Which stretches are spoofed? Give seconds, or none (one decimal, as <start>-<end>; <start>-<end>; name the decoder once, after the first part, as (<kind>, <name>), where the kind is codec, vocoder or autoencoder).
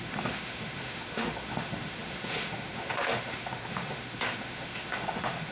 0.0-5.5 (autoencoder, DAC-VAE)